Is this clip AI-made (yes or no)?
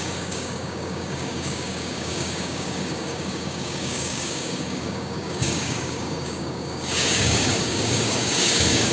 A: yes